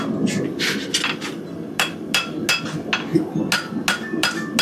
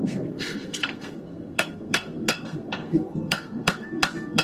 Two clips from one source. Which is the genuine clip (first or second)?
first